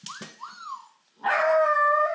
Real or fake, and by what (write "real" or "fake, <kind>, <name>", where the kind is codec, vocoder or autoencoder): real